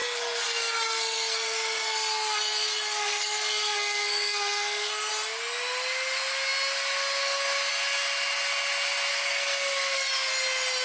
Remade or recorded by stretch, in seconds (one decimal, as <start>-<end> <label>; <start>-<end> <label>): 0.0-5.1 remade; 5.1-9.1 recorded; 9.1-10.1 remade; 10.1-10.8 recorded